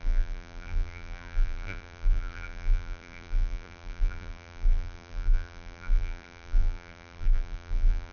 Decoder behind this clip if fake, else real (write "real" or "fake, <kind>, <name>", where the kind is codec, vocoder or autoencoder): fake, vocoder, BigVGAN v2